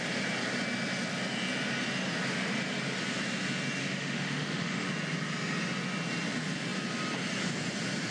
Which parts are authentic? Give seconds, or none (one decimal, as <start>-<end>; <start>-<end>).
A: 0.0-3.8; 4.9-8.1